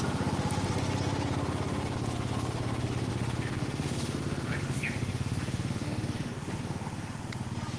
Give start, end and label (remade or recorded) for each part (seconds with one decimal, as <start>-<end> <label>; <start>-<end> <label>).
0.0-3.1 recorded; 3.1-7.2 remade; 7.2-7.8 recorded